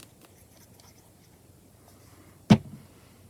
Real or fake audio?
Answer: real